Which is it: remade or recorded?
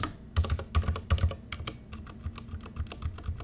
recorded